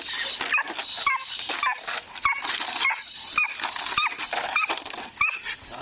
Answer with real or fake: real